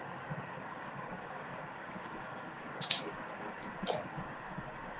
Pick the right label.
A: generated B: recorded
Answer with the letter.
A